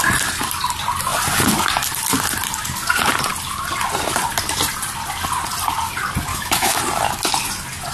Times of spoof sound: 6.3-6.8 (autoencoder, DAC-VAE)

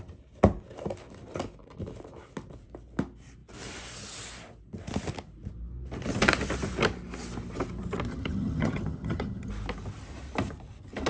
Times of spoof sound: 8.1-9.5 (vocoder, HiFi-GAN)

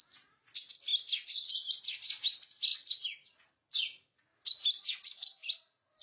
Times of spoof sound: none